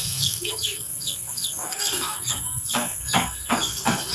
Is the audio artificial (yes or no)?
yes